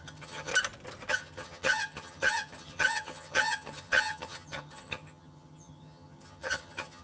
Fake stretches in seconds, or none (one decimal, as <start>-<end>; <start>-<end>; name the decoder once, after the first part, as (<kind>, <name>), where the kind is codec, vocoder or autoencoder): 0.0-0.5 (vocoder, HiFi-GAN); 1.1-7.0